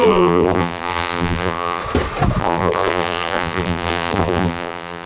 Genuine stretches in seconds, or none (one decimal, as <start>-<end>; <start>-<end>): 1.8-2.4